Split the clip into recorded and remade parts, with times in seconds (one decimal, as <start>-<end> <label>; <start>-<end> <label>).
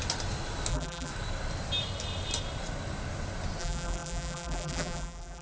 0.0-0.7 recorded; 0.7-1.1 remade; 1.1-3.6 recorded; 3.6-5.4 remade